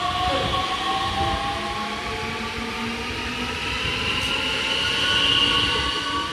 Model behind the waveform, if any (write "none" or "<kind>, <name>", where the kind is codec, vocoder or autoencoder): none